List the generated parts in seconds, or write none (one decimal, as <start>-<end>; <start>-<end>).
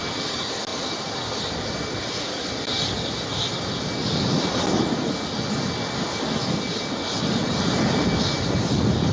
none